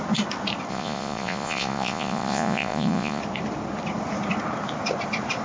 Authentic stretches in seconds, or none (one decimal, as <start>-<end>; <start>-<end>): 0.0-0.7; 3.2-5.4

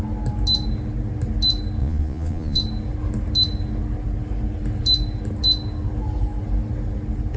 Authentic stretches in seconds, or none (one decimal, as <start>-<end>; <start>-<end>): 0.0-1.8; 2.6-7.4

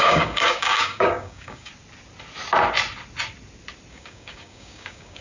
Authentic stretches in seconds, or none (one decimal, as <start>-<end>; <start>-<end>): 1.7-3.9

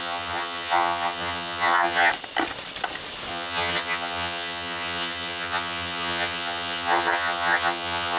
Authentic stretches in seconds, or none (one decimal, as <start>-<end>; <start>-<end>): 2.1-3.3

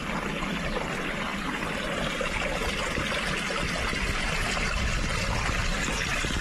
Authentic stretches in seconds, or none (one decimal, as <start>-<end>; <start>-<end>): 0.0-6.4